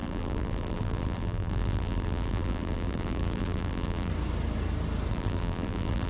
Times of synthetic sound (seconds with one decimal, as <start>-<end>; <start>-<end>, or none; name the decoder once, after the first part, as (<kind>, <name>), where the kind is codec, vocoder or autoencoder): 0.0-4.1 (vocoder, BigVGAN v2); 5.1-6.1